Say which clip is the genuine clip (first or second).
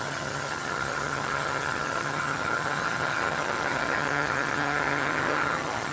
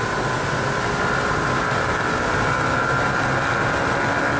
second